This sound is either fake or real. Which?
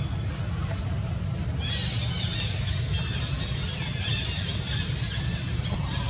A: real